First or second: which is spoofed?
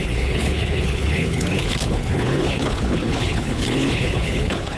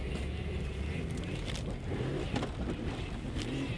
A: first